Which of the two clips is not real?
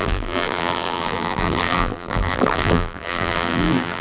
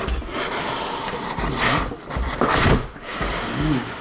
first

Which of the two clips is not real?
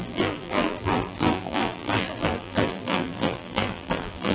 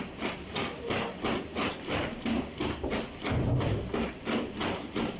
first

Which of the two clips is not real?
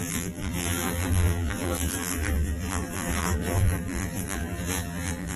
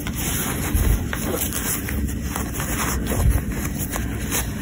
first